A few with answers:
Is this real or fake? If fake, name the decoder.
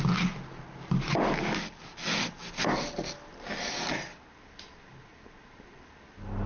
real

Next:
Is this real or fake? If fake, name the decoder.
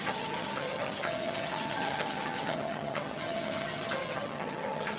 fake, vocoder, HiFi-GAN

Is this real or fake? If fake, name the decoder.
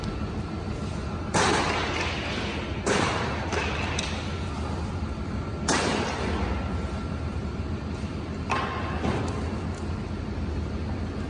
real